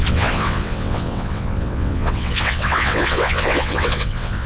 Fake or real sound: fake